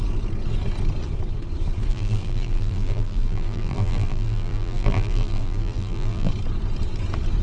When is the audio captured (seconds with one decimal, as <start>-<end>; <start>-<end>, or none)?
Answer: 0.0-1.9; 6.3-7.4